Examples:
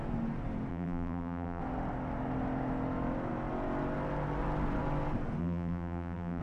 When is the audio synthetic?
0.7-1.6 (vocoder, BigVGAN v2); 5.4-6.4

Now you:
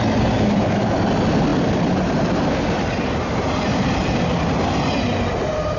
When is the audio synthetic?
none

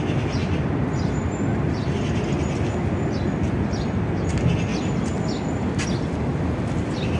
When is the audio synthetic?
0.4-1.7 (vocoder, BigVGAN v2)

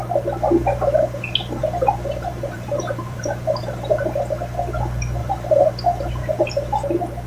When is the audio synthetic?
1.6-4.0 (vocoder, BigVGAN v2); 5.2-5.7